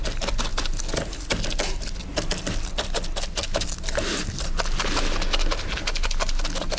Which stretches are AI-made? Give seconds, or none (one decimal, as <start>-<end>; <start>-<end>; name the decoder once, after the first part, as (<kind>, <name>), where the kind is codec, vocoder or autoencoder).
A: none